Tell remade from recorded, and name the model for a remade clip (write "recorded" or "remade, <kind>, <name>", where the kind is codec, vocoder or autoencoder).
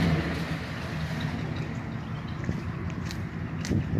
recorded